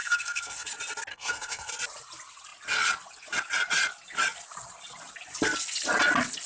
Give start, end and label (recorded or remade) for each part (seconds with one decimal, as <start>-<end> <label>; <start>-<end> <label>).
0.0-0.7 remade; 0.7-1.1 recorded; 1.1-1.7 remade; 1.7-6.5 recorded